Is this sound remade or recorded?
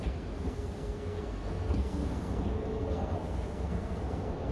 remade